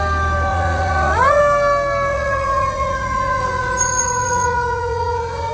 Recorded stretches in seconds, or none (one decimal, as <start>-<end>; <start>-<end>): 0.0-0.5; 1.4-2.1